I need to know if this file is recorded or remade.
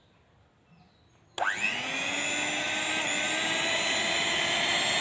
recorded